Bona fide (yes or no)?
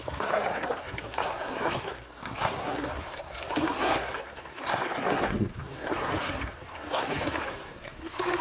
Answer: no